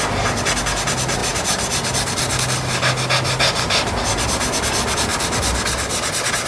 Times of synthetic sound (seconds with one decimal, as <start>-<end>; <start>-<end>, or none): none